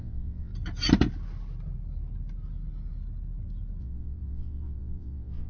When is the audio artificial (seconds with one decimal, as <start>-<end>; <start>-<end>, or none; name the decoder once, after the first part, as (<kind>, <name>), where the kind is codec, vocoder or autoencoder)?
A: 0.0-0.5 (vocoder, WaveNeXt); 3.8-5.5